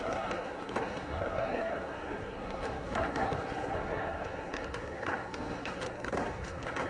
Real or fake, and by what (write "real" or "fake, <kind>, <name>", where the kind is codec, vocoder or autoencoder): fake, codec, SNAC